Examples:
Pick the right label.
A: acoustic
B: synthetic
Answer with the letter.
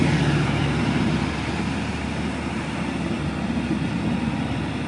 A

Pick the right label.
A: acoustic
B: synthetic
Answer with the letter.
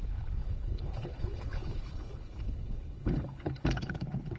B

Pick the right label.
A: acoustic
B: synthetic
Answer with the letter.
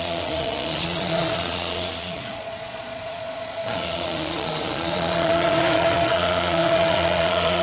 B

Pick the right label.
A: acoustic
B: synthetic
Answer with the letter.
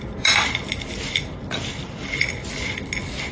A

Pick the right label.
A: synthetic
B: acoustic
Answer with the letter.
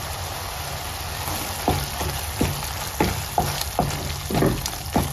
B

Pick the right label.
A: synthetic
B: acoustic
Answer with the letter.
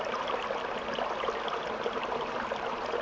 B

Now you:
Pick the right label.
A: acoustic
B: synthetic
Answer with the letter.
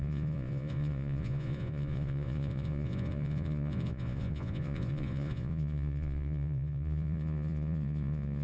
B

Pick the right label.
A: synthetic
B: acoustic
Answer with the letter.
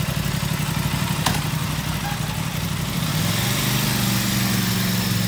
B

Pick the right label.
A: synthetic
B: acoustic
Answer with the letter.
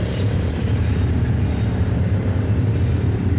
B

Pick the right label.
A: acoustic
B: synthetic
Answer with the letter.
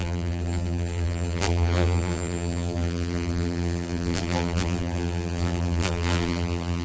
B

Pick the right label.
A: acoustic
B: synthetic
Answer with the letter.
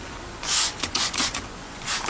B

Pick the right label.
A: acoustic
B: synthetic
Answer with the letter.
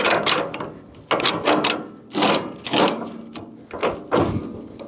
A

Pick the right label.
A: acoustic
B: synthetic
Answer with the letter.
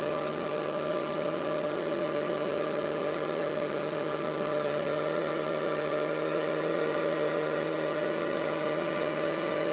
B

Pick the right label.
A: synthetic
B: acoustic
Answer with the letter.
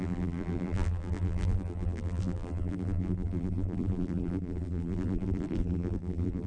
A